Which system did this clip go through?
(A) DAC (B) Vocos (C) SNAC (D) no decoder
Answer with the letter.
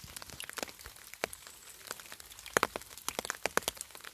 D